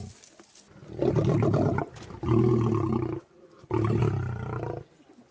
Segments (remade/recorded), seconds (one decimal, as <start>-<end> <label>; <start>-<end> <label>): 0.0-5.3 recorded